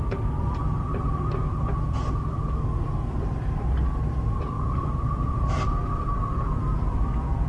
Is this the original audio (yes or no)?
no